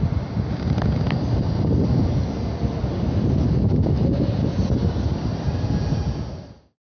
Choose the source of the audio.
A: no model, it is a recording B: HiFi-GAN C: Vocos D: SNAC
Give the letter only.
A